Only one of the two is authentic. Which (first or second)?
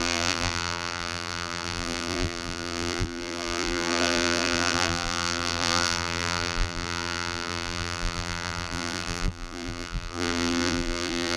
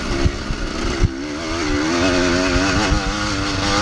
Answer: second